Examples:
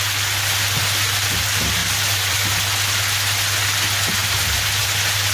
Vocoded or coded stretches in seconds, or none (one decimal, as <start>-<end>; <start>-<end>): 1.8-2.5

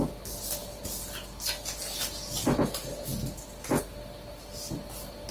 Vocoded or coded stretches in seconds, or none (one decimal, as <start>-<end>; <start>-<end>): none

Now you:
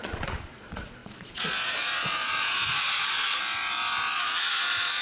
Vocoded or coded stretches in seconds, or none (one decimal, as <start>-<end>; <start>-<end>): 0.0-5.0

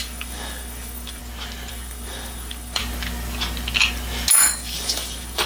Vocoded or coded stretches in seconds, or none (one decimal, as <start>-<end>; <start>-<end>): 0.0-1.2; 1.7-2.8; 4.3-5.5

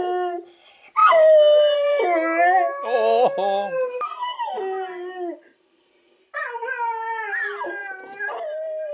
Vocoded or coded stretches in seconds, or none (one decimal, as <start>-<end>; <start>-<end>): none

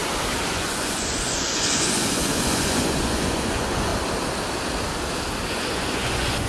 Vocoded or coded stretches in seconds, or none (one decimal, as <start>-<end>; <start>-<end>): 0.5-3.9; 5.5-6.5